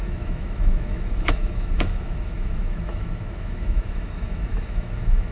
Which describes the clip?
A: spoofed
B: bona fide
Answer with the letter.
A